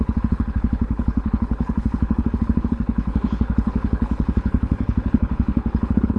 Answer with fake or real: fake